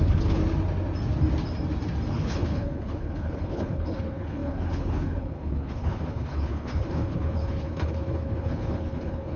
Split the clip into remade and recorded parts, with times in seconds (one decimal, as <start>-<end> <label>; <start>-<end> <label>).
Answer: 0.0-0.4 remade; 0.4-2.1 recorded; 2.1-9.4 remade